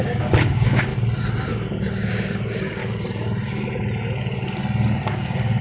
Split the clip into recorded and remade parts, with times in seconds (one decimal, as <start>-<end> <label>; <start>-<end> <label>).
0.0-0.9 remade; 0.9-1.5 recorded; 1.5-2.8 remade; 2.8-5.1 recorded; 5.1-5.6 remade